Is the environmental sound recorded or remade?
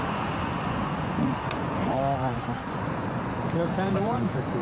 remade